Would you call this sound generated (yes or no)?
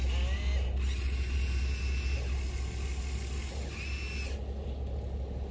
no